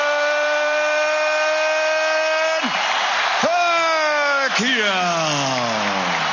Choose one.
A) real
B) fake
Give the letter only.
A